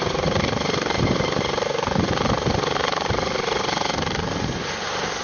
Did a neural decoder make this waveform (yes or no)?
no